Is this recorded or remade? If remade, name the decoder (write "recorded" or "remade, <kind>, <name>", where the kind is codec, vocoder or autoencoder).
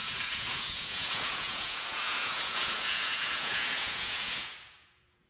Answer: remade, vocoder, Vocos